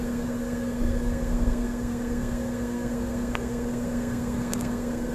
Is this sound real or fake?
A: fake